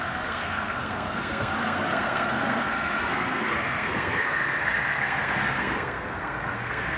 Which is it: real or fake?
fake